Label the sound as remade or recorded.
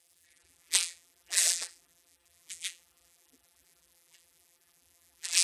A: remade